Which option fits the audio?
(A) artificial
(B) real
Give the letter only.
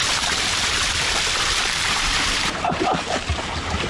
A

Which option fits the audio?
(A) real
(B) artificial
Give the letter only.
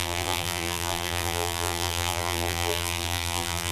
B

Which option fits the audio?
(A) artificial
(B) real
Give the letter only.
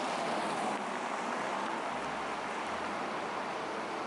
B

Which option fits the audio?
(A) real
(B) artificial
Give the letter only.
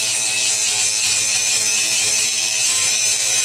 B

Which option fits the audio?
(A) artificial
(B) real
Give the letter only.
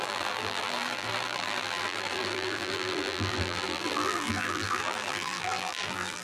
A